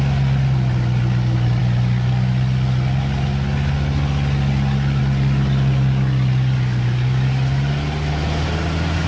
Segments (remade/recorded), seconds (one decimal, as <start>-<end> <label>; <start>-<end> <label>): 0.0-9.1 recorded